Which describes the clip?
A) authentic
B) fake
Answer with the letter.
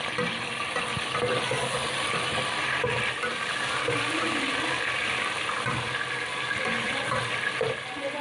A